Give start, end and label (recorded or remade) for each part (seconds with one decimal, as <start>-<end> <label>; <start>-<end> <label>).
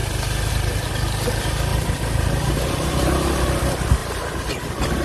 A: 0.0-1.7 recorded; 1.7-3.4 remade; 3.4-4.0 recorded; 4.0-4.5 remade; 4.5-5.0 recorded